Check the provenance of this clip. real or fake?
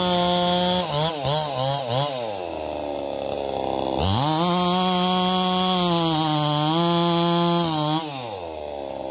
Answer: real